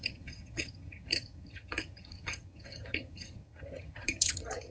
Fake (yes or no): yes